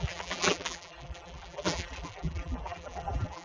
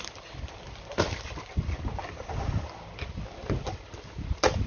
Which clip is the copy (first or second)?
first